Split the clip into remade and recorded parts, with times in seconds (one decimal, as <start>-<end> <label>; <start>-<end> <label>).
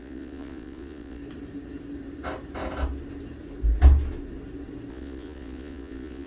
0.0-1.2 remade; 1.2-4.9 recorded; 4.9-6.3 remade